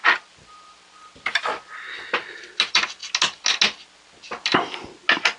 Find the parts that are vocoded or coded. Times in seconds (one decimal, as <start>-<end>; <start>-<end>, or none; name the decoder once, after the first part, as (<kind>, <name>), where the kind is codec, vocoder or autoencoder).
0.0-1.7 (vocoder, BigVGAN v2)